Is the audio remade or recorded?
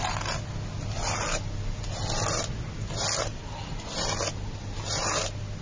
recorded